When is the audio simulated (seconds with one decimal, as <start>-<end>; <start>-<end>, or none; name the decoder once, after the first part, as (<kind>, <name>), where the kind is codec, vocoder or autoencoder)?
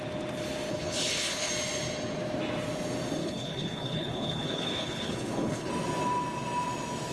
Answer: 0.7-1.5 (codec, HILCodec); 3.2-5.7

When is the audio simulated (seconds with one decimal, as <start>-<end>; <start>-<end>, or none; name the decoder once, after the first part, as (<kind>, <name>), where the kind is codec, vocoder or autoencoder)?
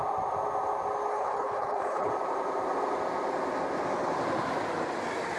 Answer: 1.1-2.1 (codec, HILCodec)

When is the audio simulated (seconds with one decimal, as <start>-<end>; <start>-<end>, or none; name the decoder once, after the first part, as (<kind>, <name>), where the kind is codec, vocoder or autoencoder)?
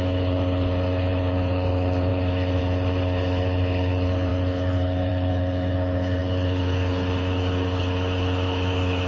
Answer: 0.0-9.1 (codec, HILCodec)